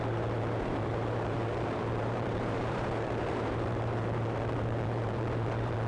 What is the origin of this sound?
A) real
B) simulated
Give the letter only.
B